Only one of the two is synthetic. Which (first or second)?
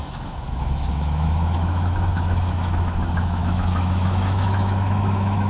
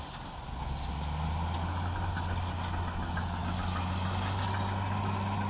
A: first